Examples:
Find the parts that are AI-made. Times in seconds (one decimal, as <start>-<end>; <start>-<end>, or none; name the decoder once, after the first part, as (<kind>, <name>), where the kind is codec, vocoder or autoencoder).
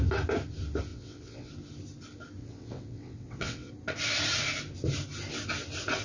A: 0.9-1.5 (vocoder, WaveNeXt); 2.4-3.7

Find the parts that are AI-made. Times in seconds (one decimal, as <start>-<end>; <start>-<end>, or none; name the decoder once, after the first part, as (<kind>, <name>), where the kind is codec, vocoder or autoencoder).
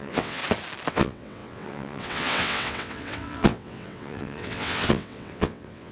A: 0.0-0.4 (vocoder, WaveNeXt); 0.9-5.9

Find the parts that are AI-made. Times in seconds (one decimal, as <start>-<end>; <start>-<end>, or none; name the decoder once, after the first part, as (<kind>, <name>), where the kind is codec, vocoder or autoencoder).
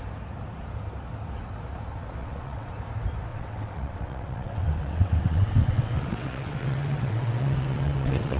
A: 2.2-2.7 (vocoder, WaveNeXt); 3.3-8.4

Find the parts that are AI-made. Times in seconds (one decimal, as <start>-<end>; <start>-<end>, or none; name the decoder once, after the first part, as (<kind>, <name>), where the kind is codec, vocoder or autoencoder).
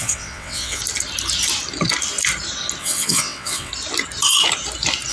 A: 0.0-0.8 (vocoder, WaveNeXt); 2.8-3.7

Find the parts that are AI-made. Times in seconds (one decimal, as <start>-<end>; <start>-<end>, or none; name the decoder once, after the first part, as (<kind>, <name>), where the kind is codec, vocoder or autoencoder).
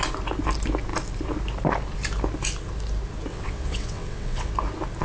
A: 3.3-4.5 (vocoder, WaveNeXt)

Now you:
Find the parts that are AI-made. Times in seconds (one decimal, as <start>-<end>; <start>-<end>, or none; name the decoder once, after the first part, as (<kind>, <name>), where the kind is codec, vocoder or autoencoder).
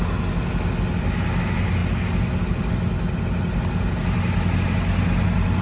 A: none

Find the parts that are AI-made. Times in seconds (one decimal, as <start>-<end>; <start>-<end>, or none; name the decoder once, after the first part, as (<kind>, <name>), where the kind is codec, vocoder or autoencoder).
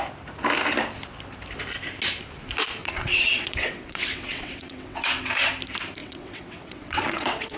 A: 2.8-5.5 (vocoder, WaveNeXt); 6.0-7.6